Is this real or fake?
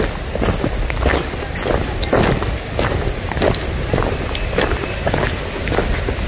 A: real